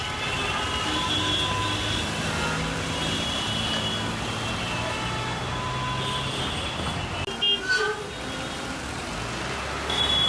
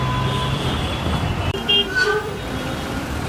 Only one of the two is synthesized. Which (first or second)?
second